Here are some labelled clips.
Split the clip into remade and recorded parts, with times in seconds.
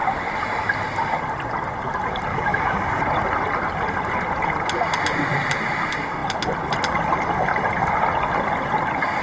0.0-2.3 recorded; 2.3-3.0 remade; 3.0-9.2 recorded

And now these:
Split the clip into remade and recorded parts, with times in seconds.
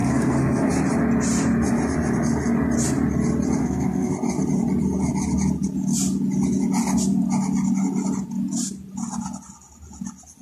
0.0-0.7 remade; 0.7-3.6 recorded; 3.6-4.1 remade; 4.1-10.4 recorded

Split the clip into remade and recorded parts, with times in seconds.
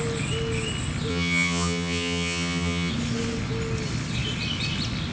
0.0-1.1 recorded; 1.1-2.9 remade; 2.9-5.1 recorded